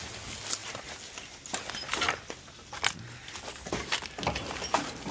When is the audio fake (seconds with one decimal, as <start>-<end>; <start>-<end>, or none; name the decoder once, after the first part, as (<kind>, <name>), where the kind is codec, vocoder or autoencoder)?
none